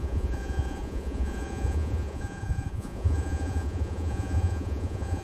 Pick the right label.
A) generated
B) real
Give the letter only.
A